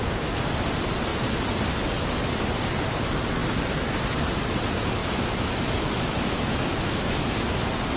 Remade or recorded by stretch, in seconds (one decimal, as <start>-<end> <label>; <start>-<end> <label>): 0.0-5.0 recorded; 5.0-7.3 remade; 7.3-8.0 recorded